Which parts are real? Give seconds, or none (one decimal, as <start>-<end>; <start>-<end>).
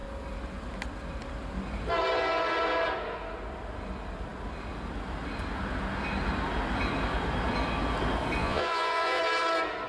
0.0-8.4; 9.2-9.9